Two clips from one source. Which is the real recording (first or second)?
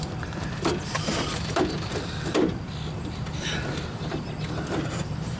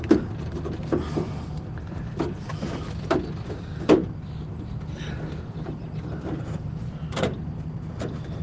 second